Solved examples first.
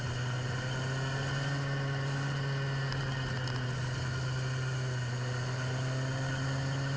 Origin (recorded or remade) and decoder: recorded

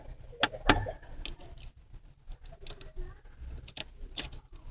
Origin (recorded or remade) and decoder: recorded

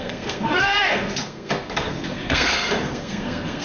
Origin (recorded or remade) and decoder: remade, codec, SNAC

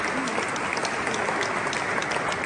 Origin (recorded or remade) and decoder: recorded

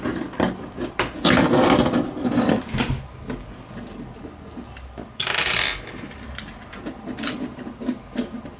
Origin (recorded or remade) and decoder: recorded